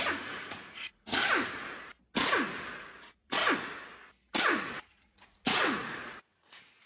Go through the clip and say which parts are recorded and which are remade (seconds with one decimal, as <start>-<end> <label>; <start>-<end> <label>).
0.0-1.2 remade; 1.2-2.8 recorded; 2.8-3.4 remade; 3.4-4.4 recorded; 4.4-6.9 remade